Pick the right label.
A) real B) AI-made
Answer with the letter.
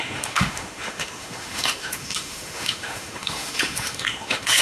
B